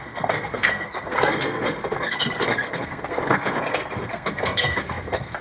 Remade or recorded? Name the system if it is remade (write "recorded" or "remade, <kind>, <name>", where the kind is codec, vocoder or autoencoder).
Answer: remade, codec, SNAC